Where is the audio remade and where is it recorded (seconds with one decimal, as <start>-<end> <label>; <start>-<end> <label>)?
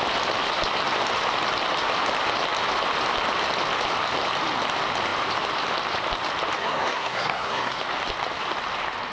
0.0-6.6 recorded; 6.6-7.8 remade; 7.8-9.1 recorded